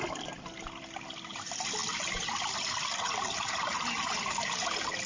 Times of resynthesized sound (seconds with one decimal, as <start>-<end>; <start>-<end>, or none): none